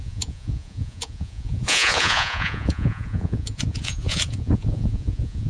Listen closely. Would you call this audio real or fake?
fake